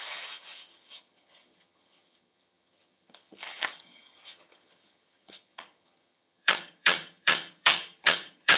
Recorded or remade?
remade